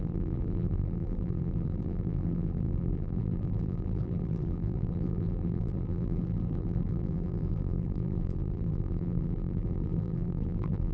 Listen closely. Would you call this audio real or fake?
fake